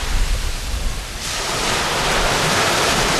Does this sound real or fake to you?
real